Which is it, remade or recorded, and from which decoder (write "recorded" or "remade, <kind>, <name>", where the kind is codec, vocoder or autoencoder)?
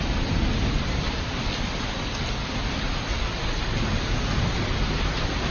recorded